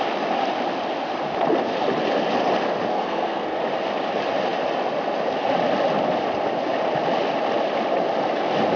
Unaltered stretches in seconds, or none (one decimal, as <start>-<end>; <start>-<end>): 0.0-2.9; 3.6-8.8